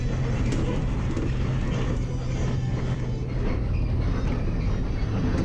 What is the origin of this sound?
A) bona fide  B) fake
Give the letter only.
A